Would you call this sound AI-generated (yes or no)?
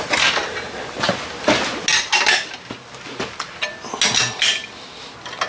no